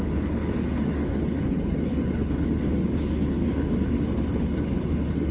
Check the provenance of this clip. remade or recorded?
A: remade